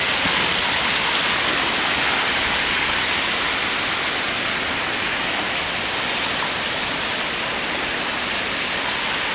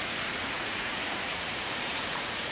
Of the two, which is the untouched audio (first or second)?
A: first